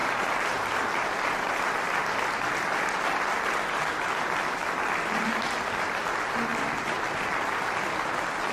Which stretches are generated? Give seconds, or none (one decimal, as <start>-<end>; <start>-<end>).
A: none